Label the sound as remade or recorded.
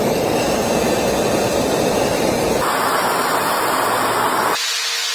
recorded